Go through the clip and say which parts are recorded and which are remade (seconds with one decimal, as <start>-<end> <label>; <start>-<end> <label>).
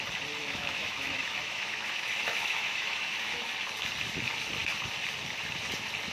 0.0-0.4 recorded; 0.4-3.4 remade; 3.4-6.1 recorded